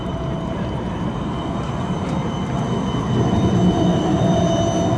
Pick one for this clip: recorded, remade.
recorded